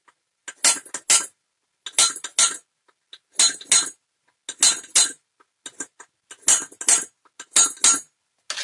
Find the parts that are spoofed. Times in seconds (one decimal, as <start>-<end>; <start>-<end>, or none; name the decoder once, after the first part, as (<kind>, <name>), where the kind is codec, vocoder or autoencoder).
none